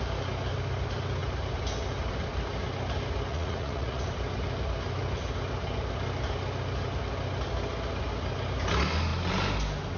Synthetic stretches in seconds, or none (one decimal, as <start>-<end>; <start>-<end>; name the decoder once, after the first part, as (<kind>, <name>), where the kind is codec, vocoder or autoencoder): 3.3-4.0 (vocoder, Vocos)

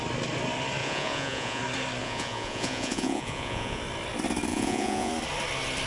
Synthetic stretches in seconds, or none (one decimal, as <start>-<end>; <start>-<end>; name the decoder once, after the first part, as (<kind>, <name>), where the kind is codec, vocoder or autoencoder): 0.8-1.6 (vocoder, Vocos); 2.0-3.8; 4.5-5.1